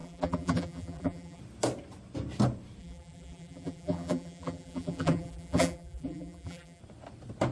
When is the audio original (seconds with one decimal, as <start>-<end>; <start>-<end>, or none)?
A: 1.4-2.8; 6.8-7.5